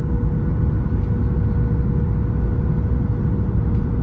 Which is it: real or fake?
real